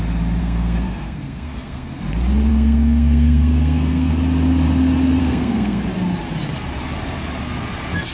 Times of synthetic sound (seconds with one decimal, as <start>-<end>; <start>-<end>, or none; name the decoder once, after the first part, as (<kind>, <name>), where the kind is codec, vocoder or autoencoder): 0.4-2.0 (codec, SNAC); 2.5-4.1; 5.2-5.8